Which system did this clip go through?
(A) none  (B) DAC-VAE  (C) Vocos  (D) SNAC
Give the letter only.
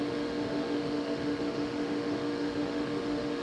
B